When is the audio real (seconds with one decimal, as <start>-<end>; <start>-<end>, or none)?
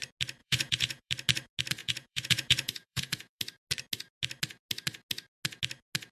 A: 0.0-0.4; 1.1-1.8; 3.4-6.1